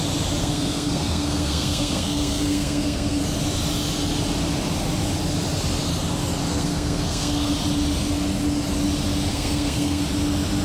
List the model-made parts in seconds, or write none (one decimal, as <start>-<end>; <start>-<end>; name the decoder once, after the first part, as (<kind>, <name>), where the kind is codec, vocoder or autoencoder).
0.4-3.2 (codec, SNAC); 6.5-7.5; 9.3-10.0